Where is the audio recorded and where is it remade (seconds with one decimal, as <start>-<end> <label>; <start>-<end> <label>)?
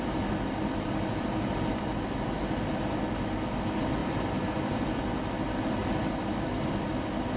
0.0-4.0 recorded; 4.0-5.0 remade; 5.0-5.8 recorded; 5.8-6.9 remade; 6.9-7.4 recorded